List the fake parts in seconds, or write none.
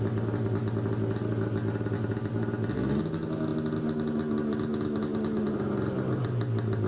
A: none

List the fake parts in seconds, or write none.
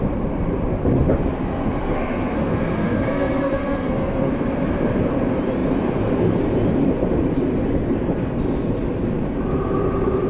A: 1.8-4.3 (codec, SNAC)